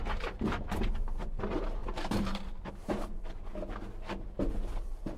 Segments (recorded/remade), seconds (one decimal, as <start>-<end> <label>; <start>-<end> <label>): 0.0-3.5 remade; 3.5-4.8 recorded; 4.8-5.2 remade